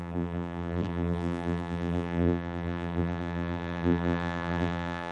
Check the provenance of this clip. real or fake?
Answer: fake